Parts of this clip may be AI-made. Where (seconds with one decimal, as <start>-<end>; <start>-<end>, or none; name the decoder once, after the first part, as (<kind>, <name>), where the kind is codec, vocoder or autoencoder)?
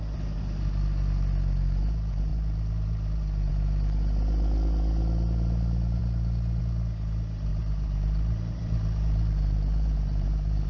2.3-3.5 (vocoder, BigVGAN v2); 7.5-10.7